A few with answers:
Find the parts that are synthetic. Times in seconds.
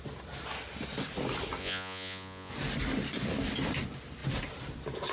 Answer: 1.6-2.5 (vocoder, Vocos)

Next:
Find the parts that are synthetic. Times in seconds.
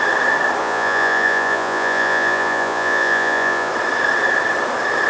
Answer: 0.6-3.7 (vocoder, Vocos)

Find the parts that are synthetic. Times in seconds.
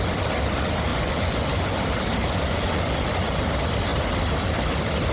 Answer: 0.9-1.8 (vocoder, Vocos); 2.2-3.4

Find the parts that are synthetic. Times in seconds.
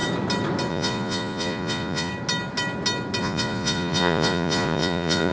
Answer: 0.7-2.1 (vocoder, Vocos); 3.2-5.3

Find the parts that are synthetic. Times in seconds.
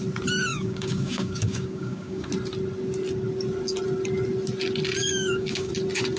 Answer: 0.5-2.3 (codec, DAC); 5.0-5.7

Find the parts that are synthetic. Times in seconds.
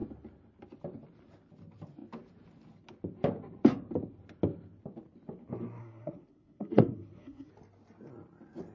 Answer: 5.8-7.5 (codec, SNAC)